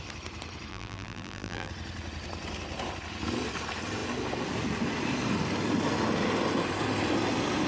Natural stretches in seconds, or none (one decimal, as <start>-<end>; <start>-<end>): 0.0-0.7; 1.7-7.7